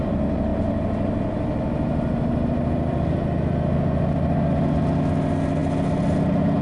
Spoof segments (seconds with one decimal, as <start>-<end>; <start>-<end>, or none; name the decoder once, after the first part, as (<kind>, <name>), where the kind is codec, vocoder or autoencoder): none